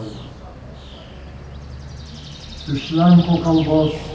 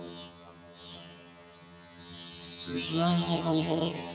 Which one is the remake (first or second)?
second